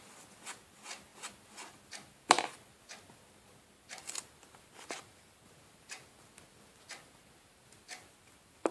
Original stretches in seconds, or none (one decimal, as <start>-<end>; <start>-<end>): 0.0-8.7